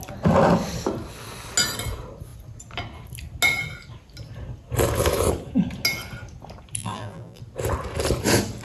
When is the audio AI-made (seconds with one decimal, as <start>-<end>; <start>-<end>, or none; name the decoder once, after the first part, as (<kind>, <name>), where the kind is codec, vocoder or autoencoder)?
6.8-7.4 (vocoder, BigVGAN v2)